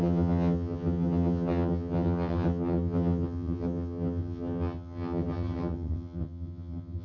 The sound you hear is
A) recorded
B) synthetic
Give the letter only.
B